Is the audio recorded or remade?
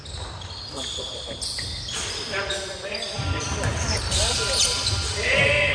recorded